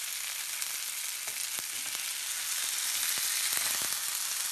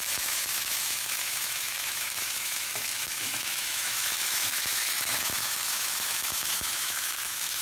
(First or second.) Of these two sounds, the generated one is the second